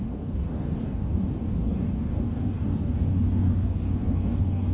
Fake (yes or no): yes